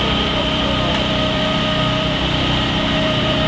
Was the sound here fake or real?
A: fake